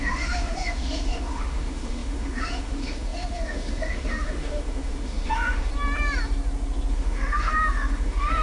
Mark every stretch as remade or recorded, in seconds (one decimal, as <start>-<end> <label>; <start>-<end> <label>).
0.0-5.7 remade; 5.7-6.9 recorded; 6.9-8.4 remade